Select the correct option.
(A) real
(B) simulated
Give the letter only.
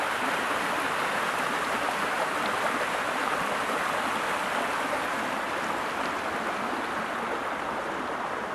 A